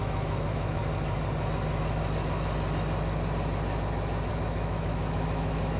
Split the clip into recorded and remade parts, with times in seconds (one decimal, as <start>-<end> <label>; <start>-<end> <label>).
0.0-0.8 remade; 0.8-4.3 recorded; 4.3-5.8 remade